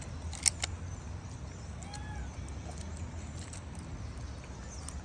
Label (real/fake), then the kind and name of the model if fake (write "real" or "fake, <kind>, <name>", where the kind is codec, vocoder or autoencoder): real